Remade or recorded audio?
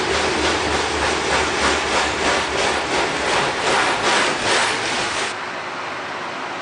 recorded